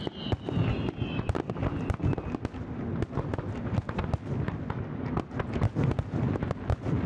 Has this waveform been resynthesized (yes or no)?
no